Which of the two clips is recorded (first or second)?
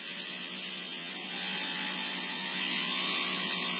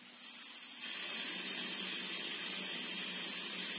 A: second